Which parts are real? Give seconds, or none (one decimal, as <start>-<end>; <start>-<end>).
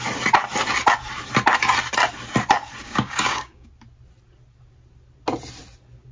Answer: 0.0-2.8; 3.7-6.1